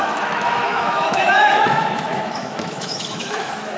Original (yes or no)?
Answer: no